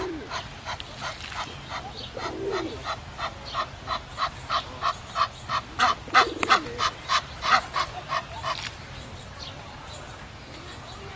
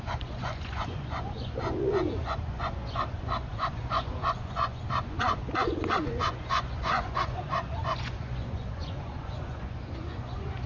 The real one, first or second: first